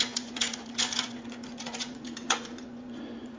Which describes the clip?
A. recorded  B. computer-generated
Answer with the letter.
B